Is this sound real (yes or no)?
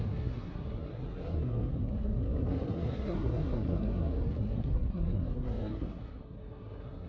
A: no